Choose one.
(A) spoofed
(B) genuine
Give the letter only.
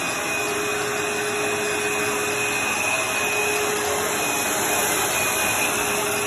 B